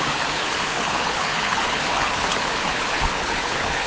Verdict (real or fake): fake